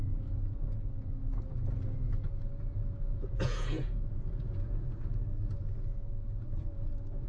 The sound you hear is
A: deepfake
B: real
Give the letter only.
A